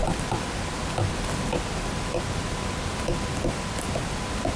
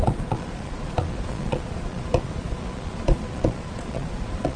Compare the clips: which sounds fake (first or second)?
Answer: second